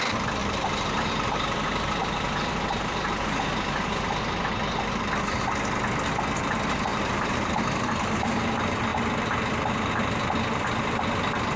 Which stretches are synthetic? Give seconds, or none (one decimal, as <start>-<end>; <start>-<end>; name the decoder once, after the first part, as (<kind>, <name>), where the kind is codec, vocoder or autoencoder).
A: 0.4-1.1 (vocoder, BigVGAN v2); 6.9-7.6